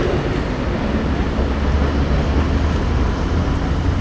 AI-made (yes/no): no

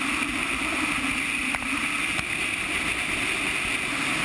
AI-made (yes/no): no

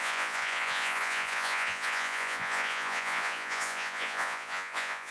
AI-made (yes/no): yes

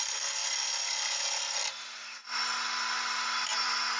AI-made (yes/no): no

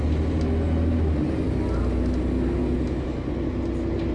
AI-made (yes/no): no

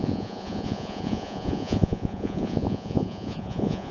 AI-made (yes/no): yes